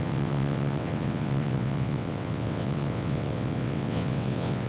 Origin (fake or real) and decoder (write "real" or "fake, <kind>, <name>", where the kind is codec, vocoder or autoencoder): fake, vocoder, WaveNeXt